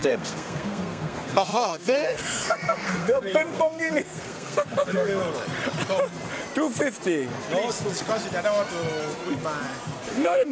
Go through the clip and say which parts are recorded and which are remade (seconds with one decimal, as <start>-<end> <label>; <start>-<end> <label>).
0.0-5.2 remade; 5.2-10.1 recorded; 10.1-10.5 remade